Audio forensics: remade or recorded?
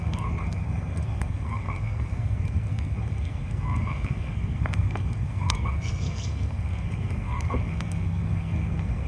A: remade